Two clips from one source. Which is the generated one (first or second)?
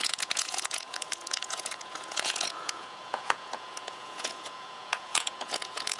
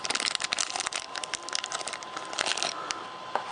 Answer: first